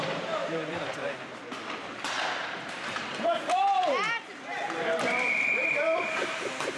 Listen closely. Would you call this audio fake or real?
fake